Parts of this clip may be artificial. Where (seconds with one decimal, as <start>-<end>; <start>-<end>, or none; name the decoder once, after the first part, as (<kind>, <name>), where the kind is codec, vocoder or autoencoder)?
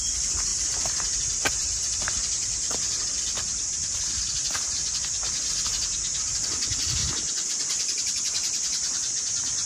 0.5-4.0 (vocoder, BigVGAN v2); 7.0-9.7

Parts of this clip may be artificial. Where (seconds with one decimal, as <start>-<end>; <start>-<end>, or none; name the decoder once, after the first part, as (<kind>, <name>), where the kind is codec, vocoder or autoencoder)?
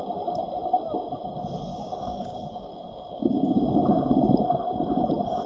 1.7-3.6 (codec, DAC)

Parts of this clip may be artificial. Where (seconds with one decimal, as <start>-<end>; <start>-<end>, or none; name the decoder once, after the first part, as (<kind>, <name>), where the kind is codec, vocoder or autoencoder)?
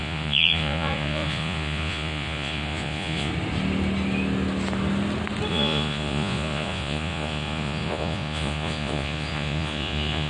0.0-3.3 (vocoder, Vocos); 5.5-10.3